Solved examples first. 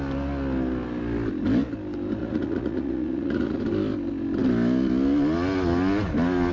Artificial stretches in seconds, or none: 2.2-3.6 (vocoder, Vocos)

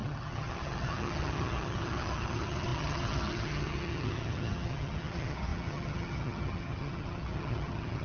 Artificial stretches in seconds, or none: 0.0-8.0 (vocoder, HiFi-GAN)

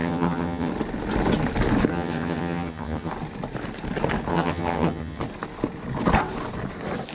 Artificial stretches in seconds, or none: 0.0-0.7 (vocoder, HiFi-GAN); 1.9-3.1; 4.3-5.2

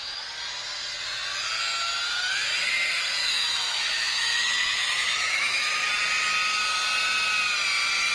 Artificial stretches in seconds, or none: 3.2-5.9 (autoencoder, DAC-VAE)

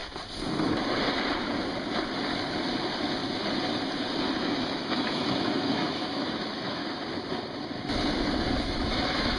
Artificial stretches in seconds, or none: 4.4-6.8 (autoencoder, DAC-VAE); 8.6-9.4

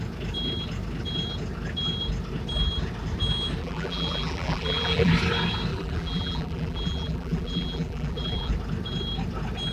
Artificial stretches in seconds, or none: 3.6-5.1 (vocoder, BigVGAN v2); 5.7-8.5

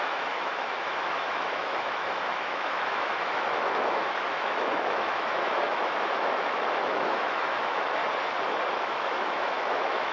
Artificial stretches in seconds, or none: 0.0-8.0 (autoencoder, DAC-VAE); 8.7-10.1

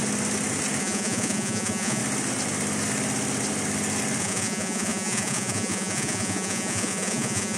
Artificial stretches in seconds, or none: 0.8-2.0 (vocoder, Vocos); 4.2-7.6